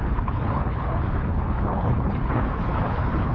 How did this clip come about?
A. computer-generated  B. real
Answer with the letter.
A